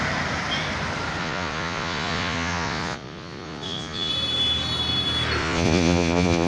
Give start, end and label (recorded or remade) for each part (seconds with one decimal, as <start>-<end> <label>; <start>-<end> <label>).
0.0-1.2 recorded; 1.2-4.1 remade; 4.1-5.4 recorded; 5.4-6.5 remade